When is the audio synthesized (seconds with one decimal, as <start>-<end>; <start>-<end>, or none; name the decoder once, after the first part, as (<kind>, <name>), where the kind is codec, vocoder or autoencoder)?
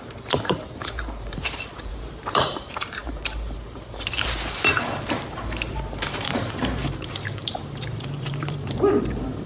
0.0-9.5 (vocoder, BigVGAN v2)